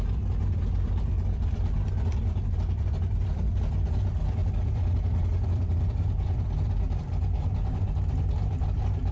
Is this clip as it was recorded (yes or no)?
no